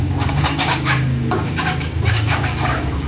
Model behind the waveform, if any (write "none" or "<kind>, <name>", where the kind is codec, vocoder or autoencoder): codec, DAC